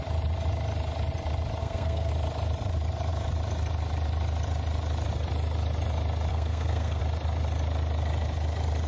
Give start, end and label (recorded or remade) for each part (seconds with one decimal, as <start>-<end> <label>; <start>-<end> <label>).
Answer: 0.0-1.6 recorded; 1.6-2.1 remade; 2.1-6.3 recorded; 6.3-7.0 remade; 7.0-8.9 recorded